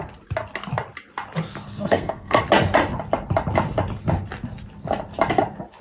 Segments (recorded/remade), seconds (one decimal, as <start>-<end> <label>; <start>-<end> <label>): 0.0-1.7 recorded; 1.7-2.4 remade; 2.4-5.8 recorded